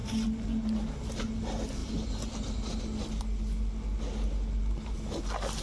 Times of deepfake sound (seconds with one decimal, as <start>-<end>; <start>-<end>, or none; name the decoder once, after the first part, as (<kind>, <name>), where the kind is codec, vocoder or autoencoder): none